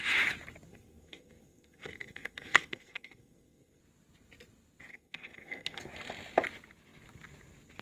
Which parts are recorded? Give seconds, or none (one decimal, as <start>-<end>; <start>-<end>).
0.0-0.7; 3.8-4.9; 5.8-7.8